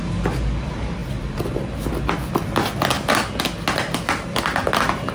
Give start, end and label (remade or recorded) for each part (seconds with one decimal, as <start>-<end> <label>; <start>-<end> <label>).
0.0-5.1 recorded